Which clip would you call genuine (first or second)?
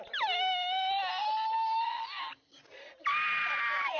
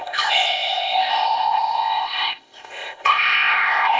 first